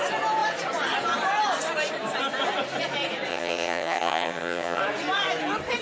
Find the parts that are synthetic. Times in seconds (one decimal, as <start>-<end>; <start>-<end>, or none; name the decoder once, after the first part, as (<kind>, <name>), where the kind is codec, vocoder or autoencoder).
3.3-4.8 (vocoder, HiFi-GAN)